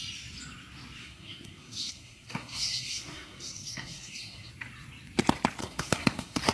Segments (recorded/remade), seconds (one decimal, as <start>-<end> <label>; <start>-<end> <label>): 0.0-1.0 recorded; 1.0-4.5 remade; 4.5-5.6 recorded; 5.6-6.5 remade